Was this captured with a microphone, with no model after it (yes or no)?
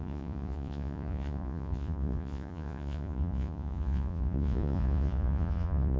no